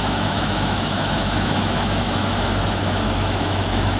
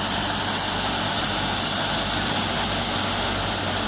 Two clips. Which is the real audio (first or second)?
second